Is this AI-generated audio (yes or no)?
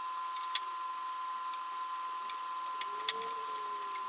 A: no